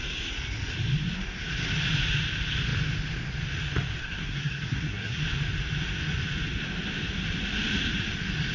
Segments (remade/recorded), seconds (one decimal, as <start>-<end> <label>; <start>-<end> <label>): 0.0-4.0 recorded; 4.0-5.2 remade; 5.2-8.5 recorded